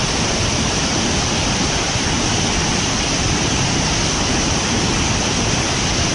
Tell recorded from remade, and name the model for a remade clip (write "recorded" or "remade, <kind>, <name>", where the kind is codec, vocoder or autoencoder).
recorded